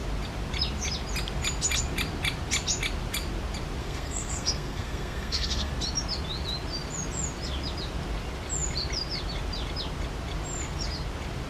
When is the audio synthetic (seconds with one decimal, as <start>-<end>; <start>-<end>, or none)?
3.8-5.7